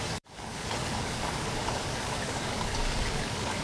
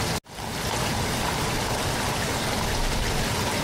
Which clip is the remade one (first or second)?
first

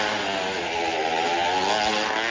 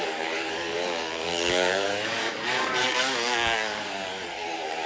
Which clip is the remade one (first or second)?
second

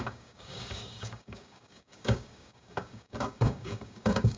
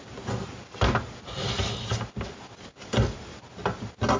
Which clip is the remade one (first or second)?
first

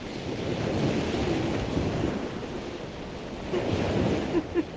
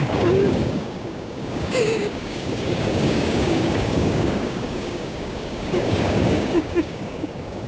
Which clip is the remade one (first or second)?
second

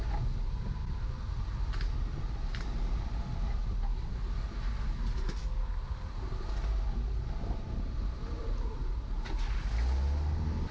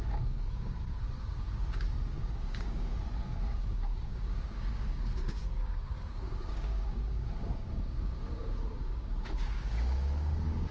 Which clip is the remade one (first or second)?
second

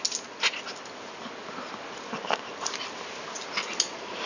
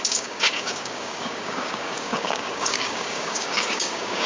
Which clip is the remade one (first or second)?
second